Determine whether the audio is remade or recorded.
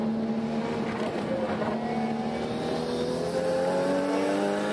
recorded